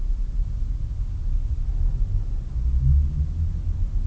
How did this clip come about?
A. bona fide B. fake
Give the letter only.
A